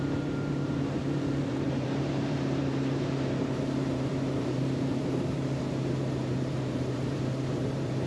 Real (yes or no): no